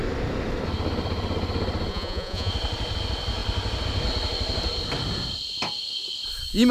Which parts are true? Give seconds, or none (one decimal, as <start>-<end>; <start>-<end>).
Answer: 0.0-1.9; 2.5-6.7